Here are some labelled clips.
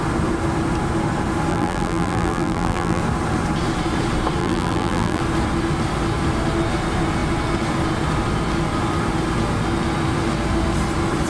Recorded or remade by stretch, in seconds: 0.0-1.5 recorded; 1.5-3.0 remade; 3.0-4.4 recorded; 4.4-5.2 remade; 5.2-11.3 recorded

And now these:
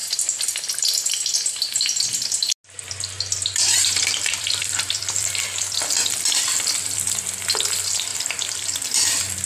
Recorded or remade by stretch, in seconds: 0.0-2.5 remade; 2.5-3.4 recorded; 3.4-7.2 remade; 7.2-8.1 recorded; 8.1-9.4 remade

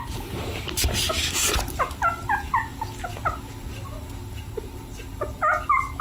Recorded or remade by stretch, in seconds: 0.0-6.0 recorded

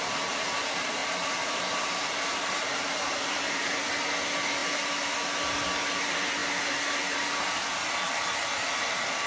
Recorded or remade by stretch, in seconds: 0.0-1.0 recorded; 1.0-3.9 remade; 3.9-9.3 recorded

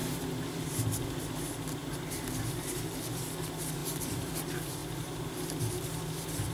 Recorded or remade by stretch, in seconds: 0.0-1.3 remade; 1.3-1.8 recorded; 1.8-3.2 remade; 3.2-3.8 recorded; 3.8-4.3 remade; 4.3-4.8 recorded; 4.8-5.6 remade; 5.6-6.5 recorded

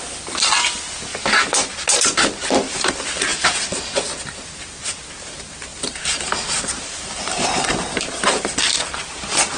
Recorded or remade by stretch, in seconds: 0.0-5.7 recorded; 5.7-8.9 remade; 8.9-9.6 recorded

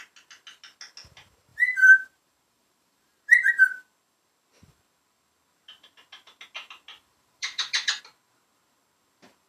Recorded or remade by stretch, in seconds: 0.0-1.5 recorded; 1.5-3.5 remade; 3.5-6.9 recorded; 6.9-8.0 remade; 8.0-9.5 recorded